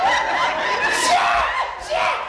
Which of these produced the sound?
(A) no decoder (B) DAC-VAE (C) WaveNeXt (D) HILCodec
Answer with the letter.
A